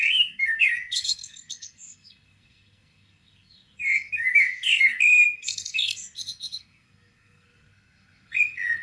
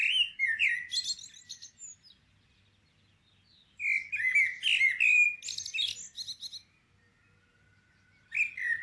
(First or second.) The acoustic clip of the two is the second